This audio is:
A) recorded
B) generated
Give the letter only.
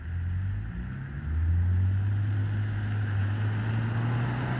A